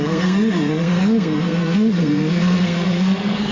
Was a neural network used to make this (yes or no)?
yes